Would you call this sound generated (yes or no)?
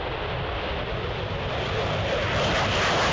no